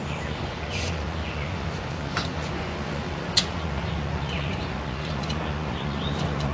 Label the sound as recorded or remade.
remade